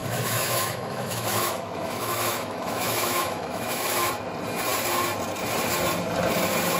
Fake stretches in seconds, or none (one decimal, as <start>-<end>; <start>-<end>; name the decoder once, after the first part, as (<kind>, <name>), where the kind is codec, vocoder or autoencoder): 0.0-4.1 (autoencoder, DAC-VAE)